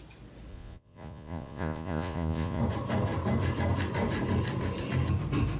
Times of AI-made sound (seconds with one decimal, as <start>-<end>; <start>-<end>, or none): 0.5-2.6